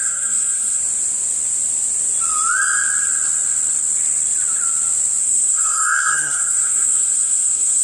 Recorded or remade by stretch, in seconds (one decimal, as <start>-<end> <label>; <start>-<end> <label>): 0.0-0.8 remade; 0.8-5.2 recorded; 5.2-7.8 remade